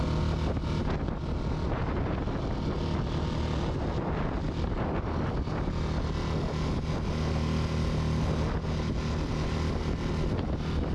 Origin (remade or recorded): recorded